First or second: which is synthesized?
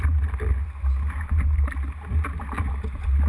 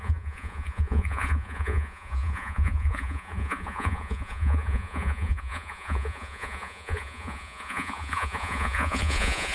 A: second